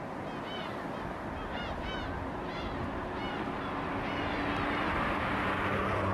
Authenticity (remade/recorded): recorded